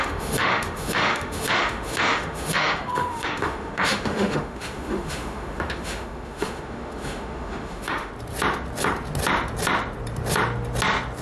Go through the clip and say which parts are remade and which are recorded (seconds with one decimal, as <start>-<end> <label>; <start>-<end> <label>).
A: 0.0-8.1 remade; 8.1-11.2 recorded